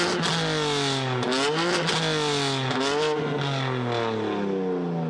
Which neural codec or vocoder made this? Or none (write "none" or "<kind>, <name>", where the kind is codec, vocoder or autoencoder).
none